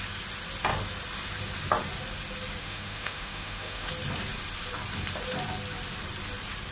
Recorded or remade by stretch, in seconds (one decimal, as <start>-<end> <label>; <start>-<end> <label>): 0.0-2.6 recorded; 2.6-3.9 remade; 3.9-6.7 recorded

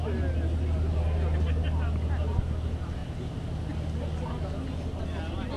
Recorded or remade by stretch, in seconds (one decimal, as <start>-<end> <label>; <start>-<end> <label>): 0.0-5.6 recorded

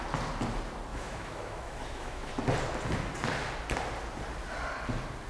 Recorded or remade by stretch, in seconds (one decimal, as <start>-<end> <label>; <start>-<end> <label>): 0.0-0.9 recorded; 0.9-2.3 remade; 2.3-5.3 recorded

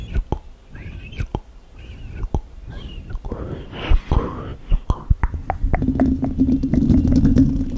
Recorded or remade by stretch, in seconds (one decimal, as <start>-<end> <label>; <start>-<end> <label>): 0.0-7.8 recorded

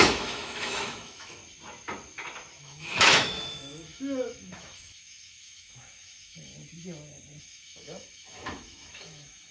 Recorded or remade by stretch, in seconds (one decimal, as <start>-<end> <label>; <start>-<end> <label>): 0.0-1.4 remade; 1.4-2.6 recorded; 2.6-6.5 remade; 6.5-7.4 recorded; 7.4-9.5 remade

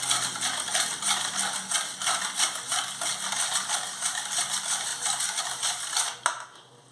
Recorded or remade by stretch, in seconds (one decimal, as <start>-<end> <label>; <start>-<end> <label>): 0.0-6.9 recorded

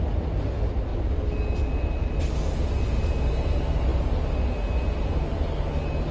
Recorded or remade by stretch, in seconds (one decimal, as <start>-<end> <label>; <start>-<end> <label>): 0.0-6.1 recorded

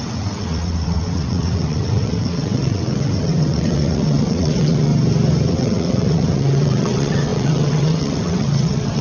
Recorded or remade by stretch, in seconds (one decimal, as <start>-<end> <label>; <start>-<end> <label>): 0.0-4.9 remade; 4.9-5.5 recorded; 5.5-9.0 remade